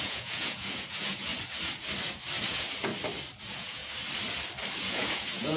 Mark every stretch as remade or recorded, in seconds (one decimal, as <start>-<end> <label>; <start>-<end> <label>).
0.0-1.3 remade; 1.3-2.5 recorded; 2.5-2.9 remade; 2.9-3.4 recorded; 3.4-3.8 remade; 3.8-4.8 recorded; 4.8-5.6 remade